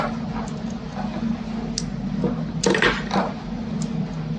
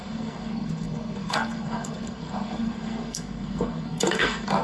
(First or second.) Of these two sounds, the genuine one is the first